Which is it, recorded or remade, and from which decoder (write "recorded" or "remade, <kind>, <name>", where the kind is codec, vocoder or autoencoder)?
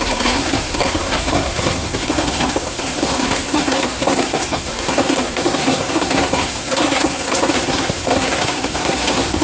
remade, codec, SNAC